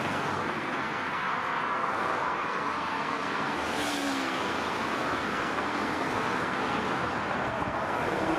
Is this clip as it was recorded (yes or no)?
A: no